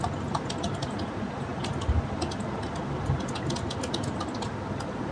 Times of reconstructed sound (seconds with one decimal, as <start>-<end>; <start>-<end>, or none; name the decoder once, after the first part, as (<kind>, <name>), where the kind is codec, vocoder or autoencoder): none